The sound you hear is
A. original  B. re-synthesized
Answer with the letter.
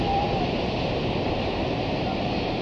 B